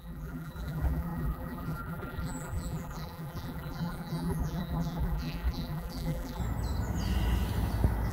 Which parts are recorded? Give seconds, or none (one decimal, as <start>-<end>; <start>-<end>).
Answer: 6.4-8.1